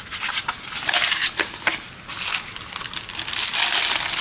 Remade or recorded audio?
recorded